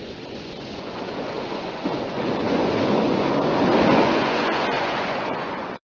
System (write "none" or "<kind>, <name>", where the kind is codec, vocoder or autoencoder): vocoder, Vocos